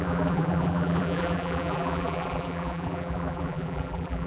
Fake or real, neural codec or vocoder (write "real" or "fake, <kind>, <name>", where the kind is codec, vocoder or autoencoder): fake, vocoder, BigVGAN v2